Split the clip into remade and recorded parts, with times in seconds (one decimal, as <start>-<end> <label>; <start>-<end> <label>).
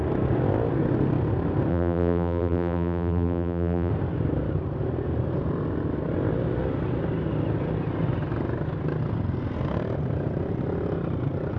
0.0-1.7 recorded; 1.7-3.9 remade; 3.9-11.6 recorded